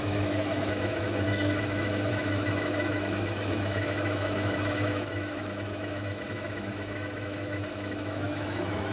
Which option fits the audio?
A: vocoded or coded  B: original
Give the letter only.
A